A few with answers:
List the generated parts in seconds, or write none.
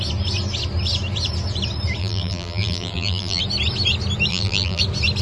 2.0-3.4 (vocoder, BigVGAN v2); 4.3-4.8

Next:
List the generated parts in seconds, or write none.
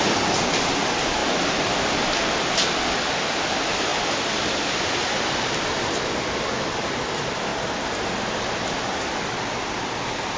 0.0-3.9 (vocoder, BigVGAN v2); 4.8-7.5; 8.6-10.4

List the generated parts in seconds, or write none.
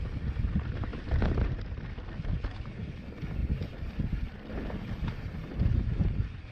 0.9-1.6 (vocoder, BigVGAN v2)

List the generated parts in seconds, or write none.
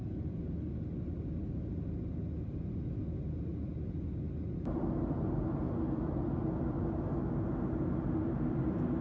none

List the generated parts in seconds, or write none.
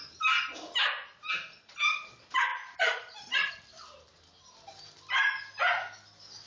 2.5-3.5 (vocoder, BigVGAN v2)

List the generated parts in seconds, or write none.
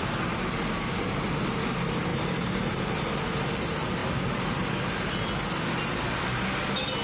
2.1-2.8 (vocoder, BigVGAN v2); 4.0-4.6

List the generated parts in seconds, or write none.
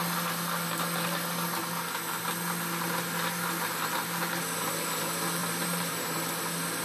5.4-6.2 (vocoder, BigVGAN v2)